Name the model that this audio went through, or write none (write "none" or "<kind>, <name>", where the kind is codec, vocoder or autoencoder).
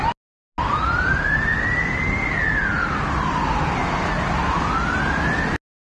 none